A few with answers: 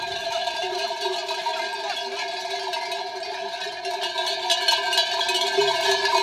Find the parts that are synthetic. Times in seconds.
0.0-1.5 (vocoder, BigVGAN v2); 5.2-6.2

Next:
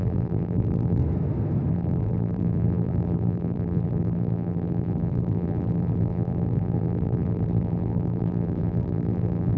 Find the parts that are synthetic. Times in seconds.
0.0-1.0 (vocoder, BigVGAN v2); 1.7-9.6

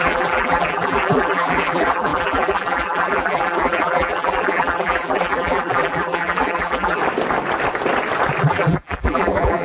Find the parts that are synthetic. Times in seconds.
0.0-7.0 (vocoder, BigVGAN v2); 8.4-9.6

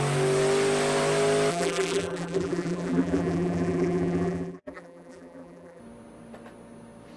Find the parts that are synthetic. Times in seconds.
1.5-5.8 (vocoder, BigVGAN v2)

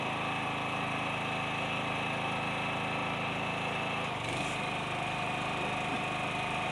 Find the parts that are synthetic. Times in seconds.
3.0-3.7 (vocoder, BigVGAN v2)